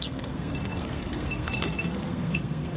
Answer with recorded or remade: remade